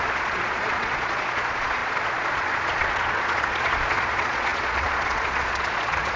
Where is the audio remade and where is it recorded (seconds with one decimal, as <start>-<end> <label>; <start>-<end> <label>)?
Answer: 0.0-6.2 remade